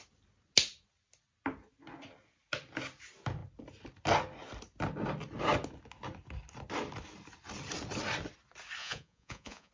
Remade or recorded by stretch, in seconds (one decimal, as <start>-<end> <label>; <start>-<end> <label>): 0.0-8.8 recorded; 8.8-9.7 remade